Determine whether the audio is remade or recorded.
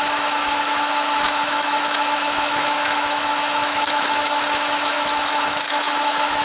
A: remade